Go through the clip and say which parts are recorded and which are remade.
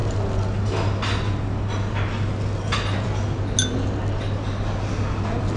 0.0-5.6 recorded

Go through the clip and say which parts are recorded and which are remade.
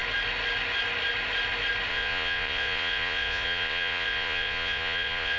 0.0-1.9 recorded; 1.9-5.4 remade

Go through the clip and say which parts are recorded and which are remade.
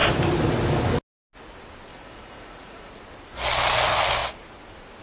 0.0-1.9 recorded; 1.9-2.9 remade; 2.9-5.0 recorded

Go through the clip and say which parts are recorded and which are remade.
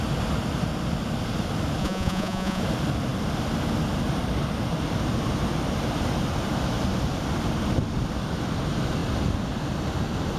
0.0-1.8 recorded; 1.8-2.6 remade; 2.6-10.4 recorded